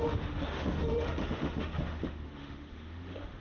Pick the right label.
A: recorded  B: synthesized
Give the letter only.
B